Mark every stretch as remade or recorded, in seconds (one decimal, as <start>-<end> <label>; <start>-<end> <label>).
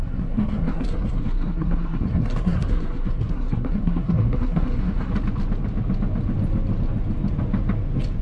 0.0-5.1 remade; 5.1-8.2 recorded